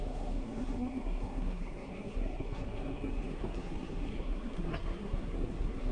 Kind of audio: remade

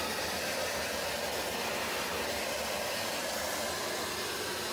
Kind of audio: remade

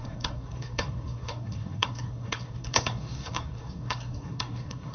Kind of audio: remade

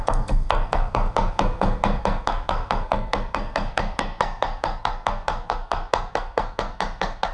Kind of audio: remade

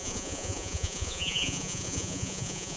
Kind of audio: remade